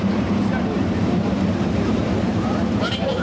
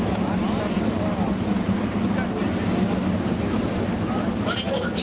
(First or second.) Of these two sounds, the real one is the second